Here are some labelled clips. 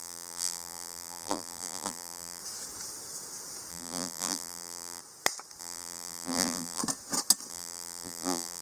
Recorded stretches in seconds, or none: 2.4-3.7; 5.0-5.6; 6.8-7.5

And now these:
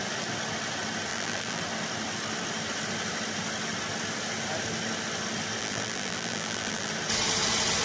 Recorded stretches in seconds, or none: 0.0-1.1; 1.6-5.6; 6.9-7.8

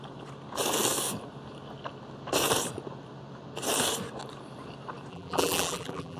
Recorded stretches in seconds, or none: 0.0-5.1